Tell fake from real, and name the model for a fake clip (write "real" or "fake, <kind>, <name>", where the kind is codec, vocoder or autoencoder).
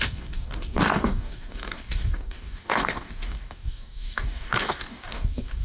fake, codec, DAC